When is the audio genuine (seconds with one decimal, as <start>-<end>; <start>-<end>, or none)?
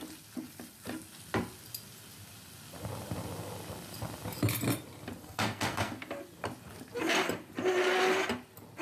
0.0-5.2; 6.0-8.8